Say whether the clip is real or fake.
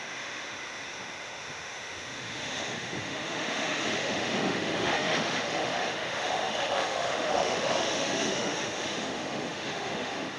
fake